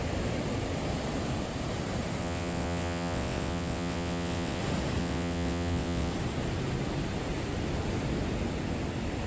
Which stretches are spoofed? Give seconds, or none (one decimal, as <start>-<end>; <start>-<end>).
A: 2.2-4.6; 5.0-6.1